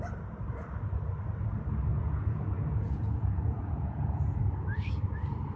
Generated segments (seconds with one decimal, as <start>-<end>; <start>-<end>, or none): 1.9-4.4